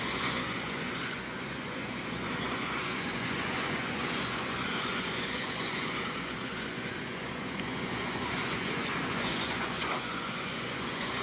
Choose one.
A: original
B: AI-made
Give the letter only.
B